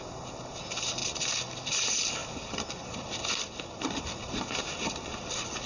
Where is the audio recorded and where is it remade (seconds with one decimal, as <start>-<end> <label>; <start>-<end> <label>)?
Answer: 0.0-2.2 recorded; 2.2-5.7 remade